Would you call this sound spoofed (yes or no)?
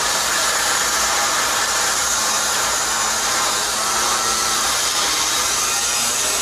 yes